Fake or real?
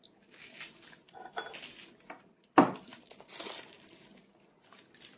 real